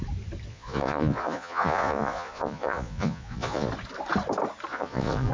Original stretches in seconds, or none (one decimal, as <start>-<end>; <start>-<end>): 0.0-0.5; 3.7-4.7